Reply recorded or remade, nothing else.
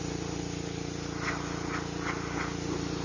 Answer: recorded